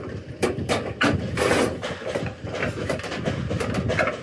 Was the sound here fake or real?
real